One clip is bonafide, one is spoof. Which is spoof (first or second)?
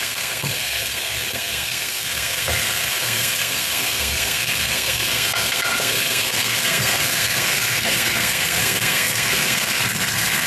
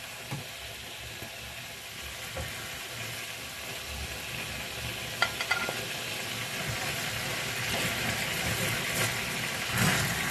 first